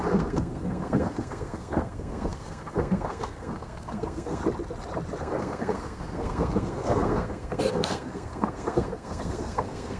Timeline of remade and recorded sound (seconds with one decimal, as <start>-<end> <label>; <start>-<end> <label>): 0.0-4.4 remade; 4.4-5.2 recorded; 5.2-10.0 remade